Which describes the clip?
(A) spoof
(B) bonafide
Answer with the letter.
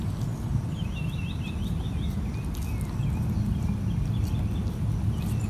B